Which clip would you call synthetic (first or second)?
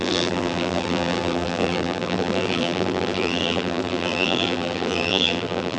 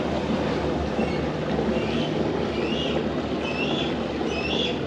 first